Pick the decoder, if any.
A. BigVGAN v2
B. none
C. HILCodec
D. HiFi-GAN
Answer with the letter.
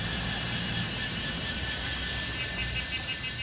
A